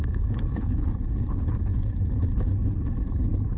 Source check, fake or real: fake